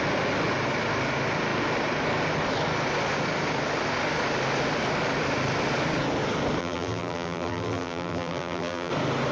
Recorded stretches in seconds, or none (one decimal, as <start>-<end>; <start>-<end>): 0.0-6.6; 8.9-9.3